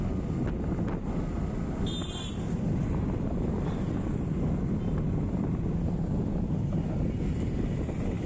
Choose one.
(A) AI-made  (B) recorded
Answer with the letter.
B